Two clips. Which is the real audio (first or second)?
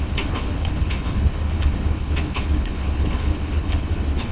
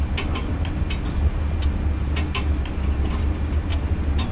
second